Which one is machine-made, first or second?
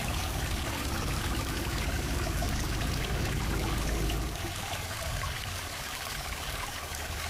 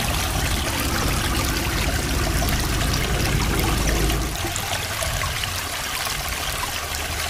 first